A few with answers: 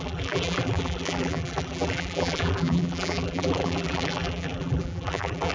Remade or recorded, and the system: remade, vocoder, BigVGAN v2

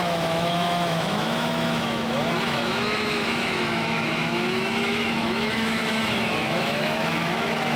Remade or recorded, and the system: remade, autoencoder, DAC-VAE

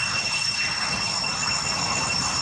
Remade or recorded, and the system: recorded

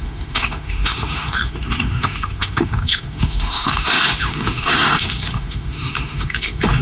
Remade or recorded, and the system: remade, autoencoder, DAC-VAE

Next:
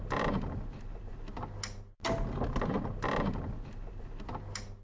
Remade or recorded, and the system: recorded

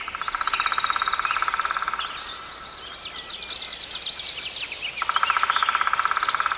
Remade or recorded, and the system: recorded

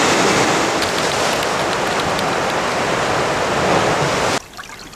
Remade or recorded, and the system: recorded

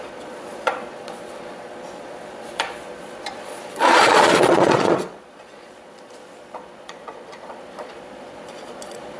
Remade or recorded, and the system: remade, vocoder, Vocos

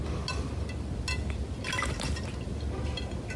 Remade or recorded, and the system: recorded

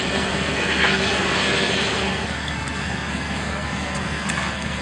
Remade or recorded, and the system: remade, codec, SNAC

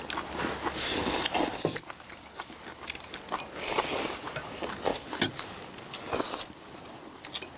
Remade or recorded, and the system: recorded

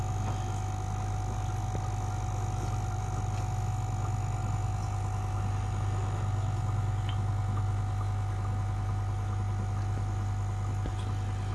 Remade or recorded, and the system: recorded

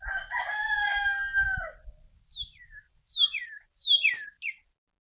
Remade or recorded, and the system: recorded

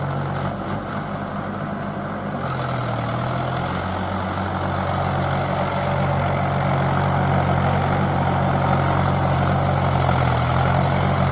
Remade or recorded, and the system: recorded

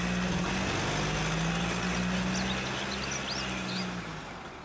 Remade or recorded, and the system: recorded